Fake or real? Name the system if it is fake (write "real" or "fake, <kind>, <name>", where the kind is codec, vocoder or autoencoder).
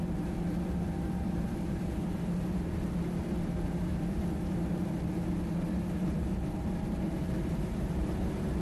fake, vocoder, BigVGAN v2